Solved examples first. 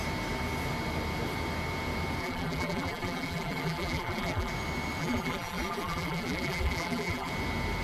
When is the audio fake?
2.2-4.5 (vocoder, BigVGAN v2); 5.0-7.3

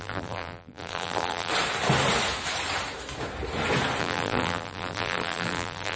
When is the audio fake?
0.0-1.5 (vocoder, BigVGAN v2); 4.0-6.0

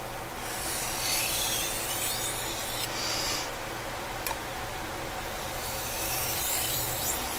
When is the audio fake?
0.0-2.6 (vocoder, BigVGAN v2); 3.2-7.4

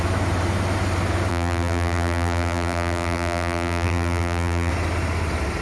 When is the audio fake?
1.3-4.7 (vocoder, BigVGAN v2)